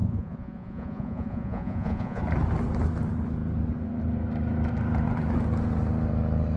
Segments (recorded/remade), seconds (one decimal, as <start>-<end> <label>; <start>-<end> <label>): 0.0-2.2 remade; 2.2-6.6 recorded